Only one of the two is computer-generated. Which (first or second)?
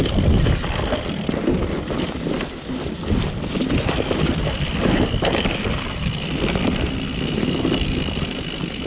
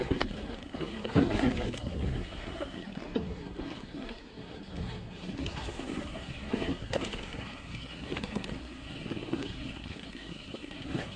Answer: second